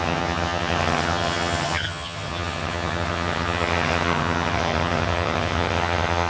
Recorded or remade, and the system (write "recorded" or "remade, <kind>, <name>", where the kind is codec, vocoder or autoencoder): remade, vocoder, HiFi-GAN